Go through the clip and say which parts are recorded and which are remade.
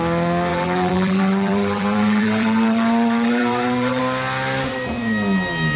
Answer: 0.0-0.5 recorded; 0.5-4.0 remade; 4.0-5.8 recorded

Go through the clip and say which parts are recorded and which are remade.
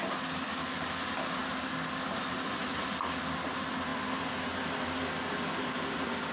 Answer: 0.0-6.3 recorded